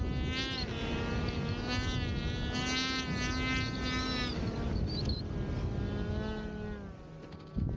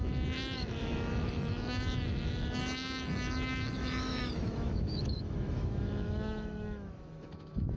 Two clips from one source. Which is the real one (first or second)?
first